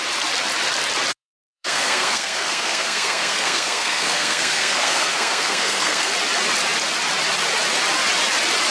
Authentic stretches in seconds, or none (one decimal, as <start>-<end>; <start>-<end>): 0.0-1.1; 6.1-8.7